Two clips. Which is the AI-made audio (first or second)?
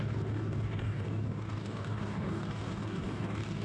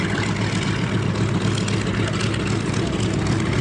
first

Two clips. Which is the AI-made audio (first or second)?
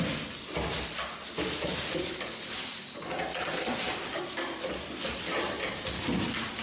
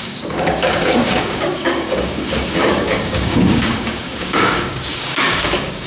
second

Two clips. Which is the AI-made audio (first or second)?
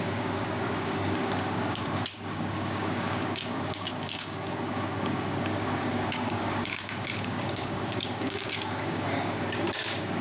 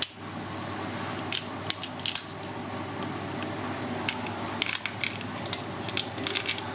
first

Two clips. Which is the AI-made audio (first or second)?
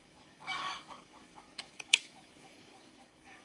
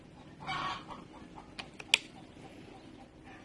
first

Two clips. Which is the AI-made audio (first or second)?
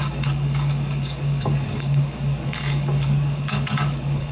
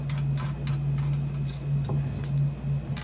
first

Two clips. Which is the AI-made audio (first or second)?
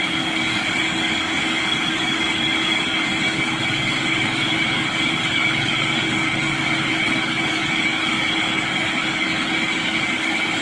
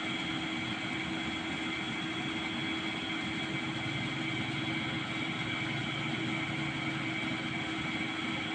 first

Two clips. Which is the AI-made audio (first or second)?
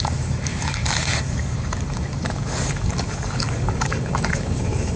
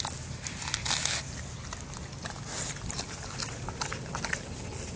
first